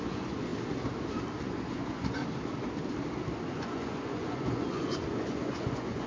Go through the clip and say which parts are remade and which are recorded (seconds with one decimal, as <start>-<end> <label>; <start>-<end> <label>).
0.0-0.5 remade; 0.5-1.4 recorded; 1.4-2.2 remade; 2.2-3.5 recorded; 3.5-6.1 remade